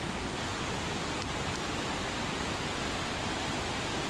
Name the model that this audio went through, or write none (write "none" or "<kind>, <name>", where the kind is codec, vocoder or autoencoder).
none